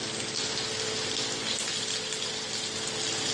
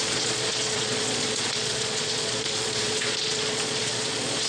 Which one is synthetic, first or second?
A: second